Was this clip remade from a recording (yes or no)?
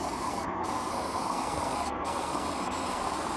yes